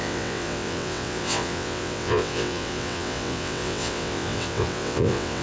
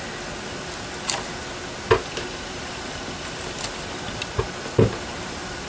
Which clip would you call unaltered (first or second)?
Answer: second